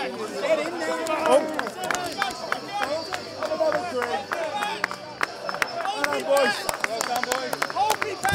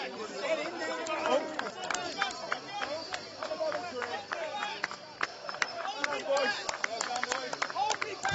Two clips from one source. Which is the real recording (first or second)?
first